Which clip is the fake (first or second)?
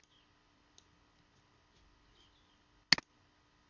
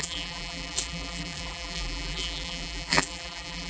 second